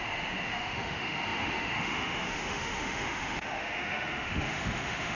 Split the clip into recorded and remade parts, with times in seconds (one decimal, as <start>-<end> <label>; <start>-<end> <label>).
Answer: 0.0-5.1 remade